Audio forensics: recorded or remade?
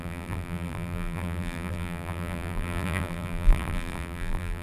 remade